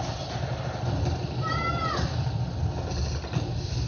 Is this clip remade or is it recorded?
recorded